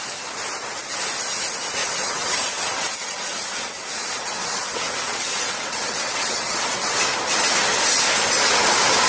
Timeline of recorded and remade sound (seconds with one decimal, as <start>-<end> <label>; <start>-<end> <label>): 0.0-1.8 recorded; 1.8-6.9 remade; 6.9-9.1 recorded